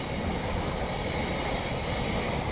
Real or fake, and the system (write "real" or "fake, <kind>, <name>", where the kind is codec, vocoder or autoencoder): real